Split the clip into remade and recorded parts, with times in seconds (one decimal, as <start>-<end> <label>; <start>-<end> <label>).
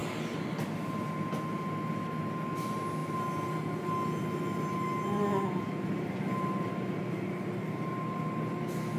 0.0-9.0 recorded